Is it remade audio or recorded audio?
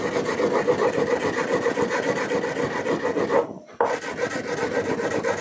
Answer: recorded